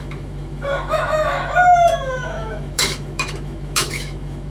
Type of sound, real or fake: fake